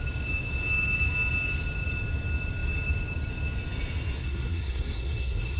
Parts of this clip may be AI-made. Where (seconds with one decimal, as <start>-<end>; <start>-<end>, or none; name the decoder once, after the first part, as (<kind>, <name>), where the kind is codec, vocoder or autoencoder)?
4.2-5.6 (codec, SNAC)